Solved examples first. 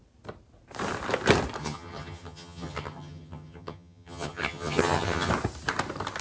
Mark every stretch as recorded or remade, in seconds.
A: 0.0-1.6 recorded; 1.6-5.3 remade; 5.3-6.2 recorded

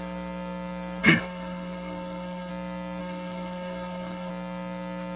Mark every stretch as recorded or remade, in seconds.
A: 0.0-1.0 recorded; 1.0-2.5 remade; 2.5-3.0 recorded; 3.0-4.3 remade; 4.3-5.2 recorded

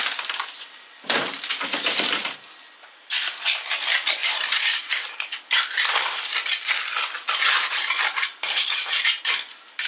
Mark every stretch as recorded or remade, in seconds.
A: 0.0-9.9 remade

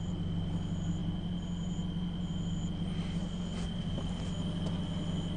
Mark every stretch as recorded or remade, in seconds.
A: 0.0-5.4 recorded

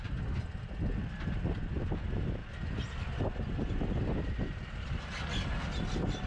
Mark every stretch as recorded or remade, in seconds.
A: 0.0-6.3 recorded